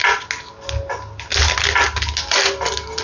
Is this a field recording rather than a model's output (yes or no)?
yes